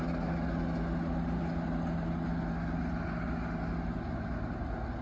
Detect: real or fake real